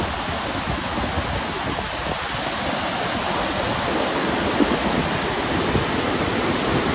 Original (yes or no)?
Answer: yes